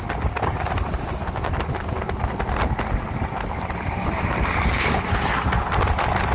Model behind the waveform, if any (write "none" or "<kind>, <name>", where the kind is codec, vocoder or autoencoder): none